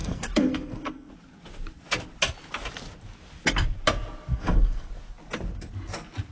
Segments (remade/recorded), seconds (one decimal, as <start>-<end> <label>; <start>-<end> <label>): 0.0-1.1 remade; 1.1-4.3 recorded; 4.3-4.9 remade; 4.9-6.3 recorded